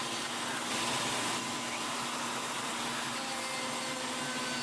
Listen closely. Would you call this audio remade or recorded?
recorded